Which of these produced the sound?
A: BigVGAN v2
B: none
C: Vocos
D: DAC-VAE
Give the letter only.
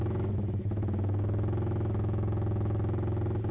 D